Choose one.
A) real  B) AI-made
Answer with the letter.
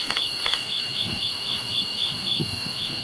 B